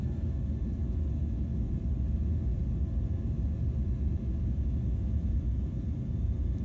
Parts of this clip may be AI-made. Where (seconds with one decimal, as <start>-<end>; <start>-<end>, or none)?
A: none